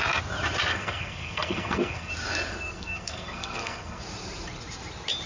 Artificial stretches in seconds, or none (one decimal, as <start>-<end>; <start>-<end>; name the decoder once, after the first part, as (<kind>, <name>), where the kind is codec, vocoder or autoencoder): 0.7-2.1 (codec, SNAC); 2.5-4.0